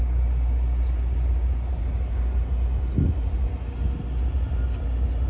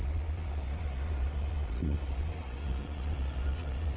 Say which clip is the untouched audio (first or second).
first